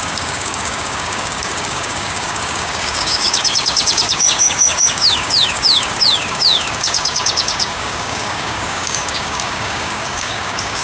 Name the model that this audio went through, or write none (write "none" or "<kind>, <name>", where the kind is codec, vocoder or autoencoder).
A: codec, DAC